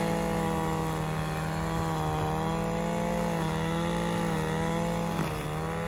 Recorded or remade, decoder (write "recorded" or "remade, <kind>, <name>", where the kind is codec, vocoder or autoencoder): recorded